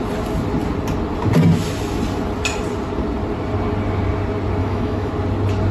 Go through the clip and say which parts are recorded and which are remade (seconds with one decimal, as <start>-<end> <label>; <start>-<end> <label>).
0.0-4.6 recorded; 4.6-5.1 remade; 5.1-5.7 recorded